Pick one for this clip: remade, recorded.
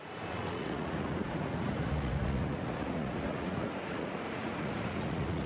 remade